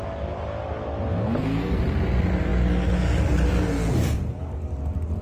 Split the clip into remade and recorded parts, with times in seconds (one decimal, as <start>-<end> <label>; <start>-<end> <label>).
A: 0.0-1.2 recorded; 1.2-1.8 remade; 1.8-5.2 recorded